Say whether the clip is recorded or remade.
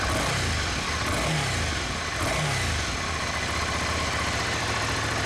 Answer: recorded